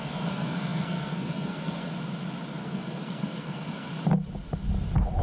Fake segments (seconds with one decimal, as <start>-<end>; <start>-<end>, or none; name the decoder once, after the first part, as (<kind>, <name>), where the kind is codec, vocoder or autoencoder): 0.0-1.9 (codec, SNAC); 2.6-3.9